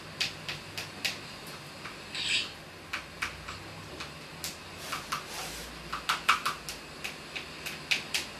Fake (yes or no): no